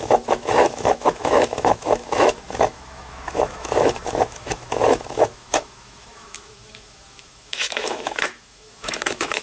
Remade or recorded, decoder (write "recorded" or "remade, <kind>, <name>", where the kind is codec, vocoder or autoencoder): remade, autoencoder, DAC-VAE